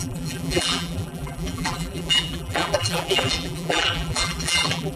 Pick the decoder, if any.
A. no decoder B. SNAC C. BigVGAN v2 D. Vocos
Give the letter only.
C